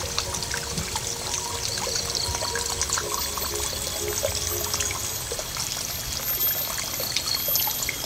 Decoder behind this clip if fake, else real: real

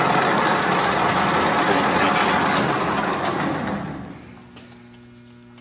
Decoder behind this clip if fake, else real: real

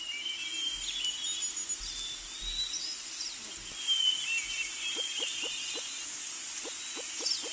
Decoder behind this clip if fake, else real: real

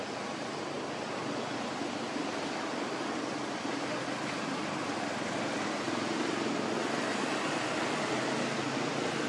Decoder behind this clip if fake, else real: real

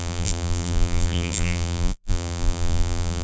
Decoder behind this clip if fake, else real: fake, vocoder, BigVGAN v2